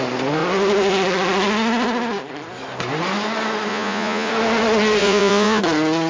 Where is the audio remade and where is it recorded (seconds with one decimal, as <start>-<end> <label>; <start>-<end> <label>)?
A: 0.0-3.7 recorded; 3.7-4.3 remade; 4.3-5.0 recorded; 5.0-5.6 remade; 5.6-6.1 recorded